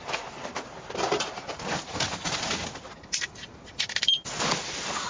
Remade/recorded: recorded